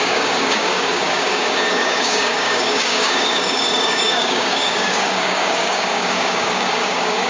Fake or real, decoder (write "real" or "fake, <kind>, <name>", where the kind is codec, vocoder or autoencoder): fake, codec, DAC